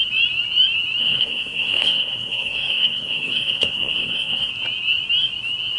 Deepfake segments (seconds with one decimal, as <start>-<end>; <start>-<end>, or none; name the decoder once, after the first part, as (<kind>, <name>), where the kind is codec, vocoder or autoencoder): 1.0-4.5 (codec, SNAC)